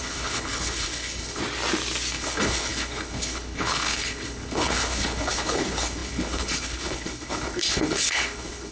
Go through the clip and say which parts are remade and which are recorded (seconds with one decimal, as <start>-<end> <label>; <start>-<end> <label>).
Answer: 0.0-1.4 remade; 1.4-2.1 recorded; 2.1-8.7 remade

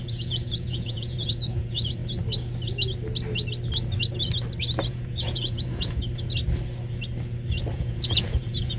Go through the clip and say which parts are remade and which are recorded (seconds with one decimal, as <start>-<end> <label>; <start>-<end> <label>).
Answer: 0.0-2.0 remade; 2.0-4.9 recorded; 4.9-6.0 remade; 6.0-7.7 recorded; 7.7-8.8 remade

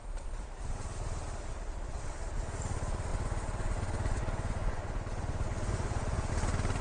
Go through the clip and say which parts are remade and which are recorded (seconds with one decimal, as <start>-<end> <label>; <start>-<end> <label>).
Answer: 0.0-3.1 recorded; 3.1-6.3 remade; 6.3-6.8 recorded

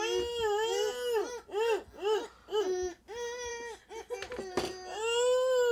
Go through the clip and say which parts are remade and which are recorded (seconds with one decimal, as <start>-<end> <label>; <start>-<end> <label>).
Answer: 0.0-5.7 recorded

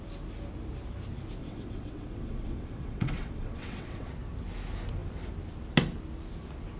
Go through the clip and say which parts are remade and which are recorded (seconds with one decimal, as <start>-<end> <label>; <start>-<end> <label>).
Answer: 0.0-1.4 recorded; 1.4-4.1 remade; 4.1-6.8 recorded